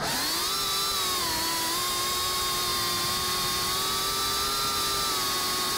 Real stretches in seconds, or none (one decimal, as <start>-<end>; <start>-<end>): 0.0-5.8